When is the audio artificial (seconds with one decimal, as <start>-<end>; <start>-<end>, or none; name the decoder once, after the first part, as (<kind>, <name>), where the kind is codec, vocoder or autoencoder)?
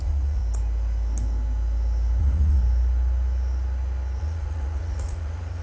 0.0-0.4 (vocoder, Vocos); 2.2-2.6; 4.2-5.6